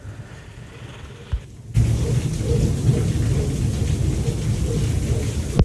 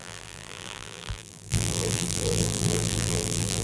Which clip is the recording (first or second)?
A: first